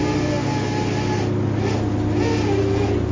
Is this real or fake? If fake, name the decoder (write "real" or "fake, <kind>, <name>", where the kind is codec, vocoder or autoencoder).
real